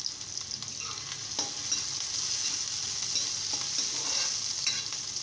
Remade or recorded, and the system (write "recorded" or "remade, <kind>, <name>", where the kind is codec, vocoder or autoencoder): recorded